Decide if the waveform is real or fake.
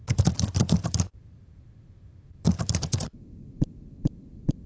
fake